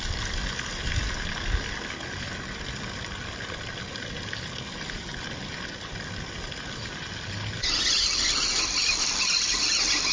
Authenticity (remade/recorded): recorded